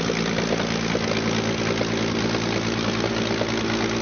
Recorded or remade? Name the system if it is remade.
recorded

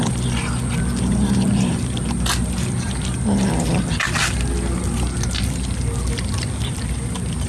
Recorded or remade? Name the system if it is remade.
recorded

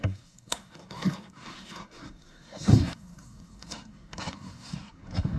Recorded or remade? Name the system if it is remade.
remade, codec, SNAC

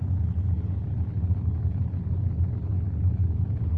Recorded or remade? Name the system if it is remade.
recorded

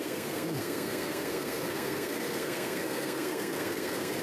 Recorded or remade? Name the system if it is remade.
remade, codec, SNAC